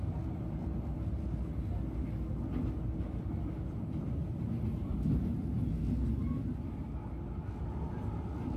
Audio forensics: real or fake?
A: real